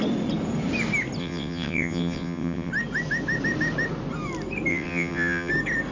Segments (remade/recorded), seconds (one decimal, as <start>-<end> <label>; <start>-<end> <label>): 0.0-1.2 recorded; 1.2-2.7 remade; 2.7-4.7 recorded; 4.7-5.5 remade; 5.5-5.9 recorded